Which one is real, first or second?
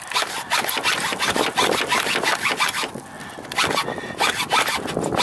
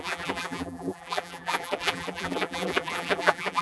first